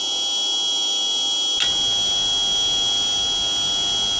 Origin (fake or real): real